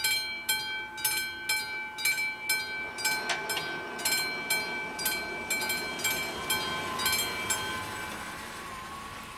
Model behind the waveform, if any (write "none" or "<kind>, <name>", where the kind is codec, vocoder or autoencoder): none